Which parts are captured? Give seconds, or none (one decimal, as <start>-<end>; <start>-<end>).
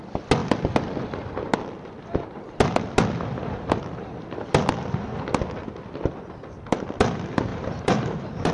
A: 0.0-7.5